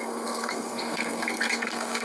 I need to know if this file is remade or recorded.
remade